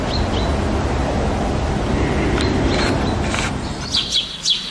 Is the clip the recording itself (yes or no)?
yes